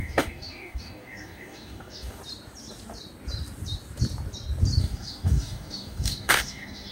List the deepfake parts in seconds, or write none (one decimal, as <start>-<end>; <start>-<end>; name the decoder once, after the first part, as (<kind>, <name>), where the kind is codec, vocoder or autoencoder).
0.0-2.2 (codec, DAC); 4.8-6.9